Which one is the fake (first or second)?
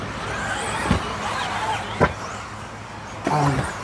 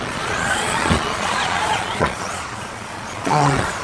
second